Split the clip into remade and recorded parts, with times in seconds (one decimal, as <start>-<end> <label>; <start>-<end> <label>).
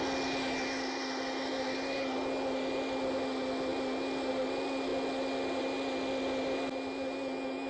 0.0-7.7 recorded